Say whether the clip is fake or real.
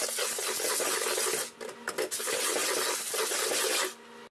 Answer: real